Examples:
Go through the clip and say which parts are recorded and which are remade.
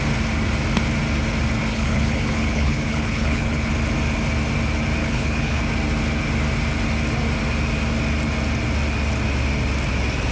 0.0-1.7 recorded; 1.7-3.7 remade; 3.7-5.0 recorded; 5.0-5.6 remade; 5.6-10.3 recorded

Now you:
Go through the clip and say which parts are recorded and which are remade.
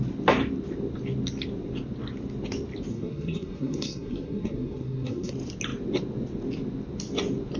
0.0-2.9 recorded; 2.9-5.3 remade; 5.3-7.6 recorded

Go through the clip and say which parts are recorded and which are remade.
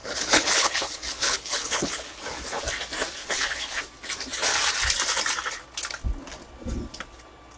0.0-2.6 remade; 2.6-3.2 recorded; 3.2-3.8 remade; 3.8-7.6 recorded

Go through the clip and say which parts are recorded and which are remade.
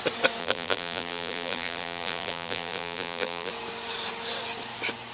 0.0-0.4 recorded; 0.4-3.5 remade; 3.5-5.1 recorded